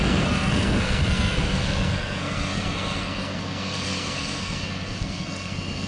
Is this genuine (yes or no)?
no